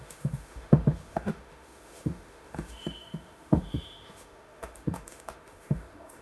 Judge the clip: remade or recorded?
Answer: remade